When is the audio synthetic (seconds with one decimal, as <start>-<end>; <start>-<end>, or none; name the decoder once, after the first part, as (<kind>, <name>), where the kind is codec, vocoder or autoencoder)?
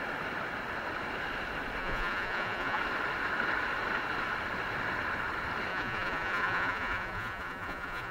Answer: 1.8-2.8 (vocoder, Vocos); 5.7-8.1